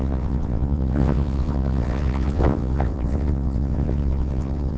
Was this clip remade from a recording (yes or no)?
yes